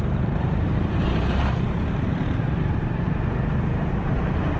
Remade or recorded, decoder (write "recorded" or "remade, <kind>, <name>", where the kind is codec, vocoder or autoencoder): remade, vocoder, BigVGAN v2